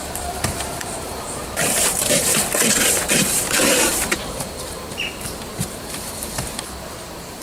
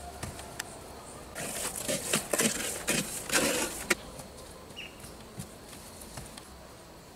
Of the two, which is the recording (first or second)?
second